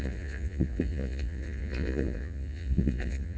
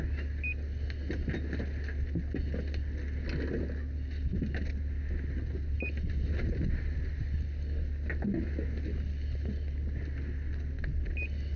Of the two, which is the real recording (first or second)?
second